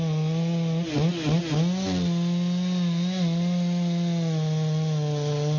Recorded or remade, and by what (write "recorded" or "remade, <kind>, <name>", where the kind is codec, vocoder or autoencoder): recorded